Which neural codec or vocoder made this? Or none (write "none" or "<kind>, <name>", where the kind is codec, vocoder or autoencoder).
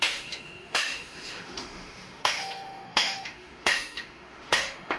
autoencoder, DAC-VAE